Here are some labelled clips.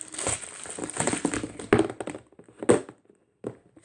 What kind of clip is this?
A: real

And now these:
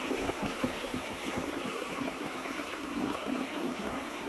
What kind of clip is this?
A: fake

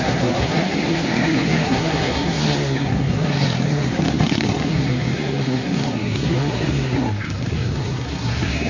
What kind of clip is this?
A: fake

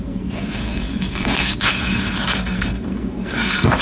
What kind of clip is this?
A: fake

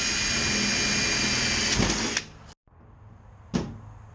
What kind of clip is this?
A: real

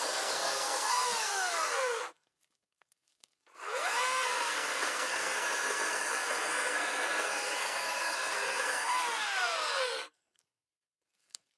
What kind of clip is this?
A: fake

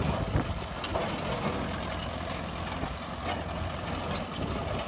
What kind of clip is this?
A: real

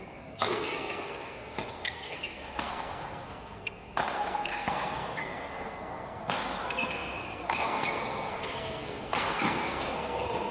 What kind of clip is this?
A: fake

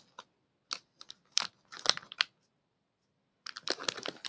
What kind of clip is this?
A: real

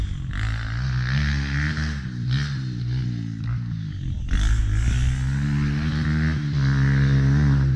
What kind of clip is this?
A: real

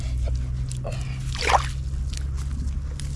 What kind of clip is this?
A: real